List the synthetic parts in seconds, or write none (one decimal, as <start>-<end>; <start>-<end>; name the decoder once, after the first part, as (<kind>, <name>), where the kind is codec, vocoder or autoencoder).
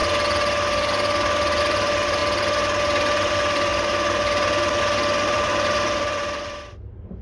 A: 1.6-2.2 (vocoder, BigVGAN v2); 3.3-3.7; 5.2-7.2